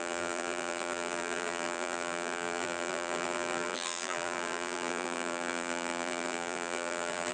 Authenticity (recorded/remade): remade